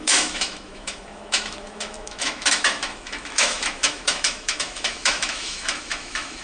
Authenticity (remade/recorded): remade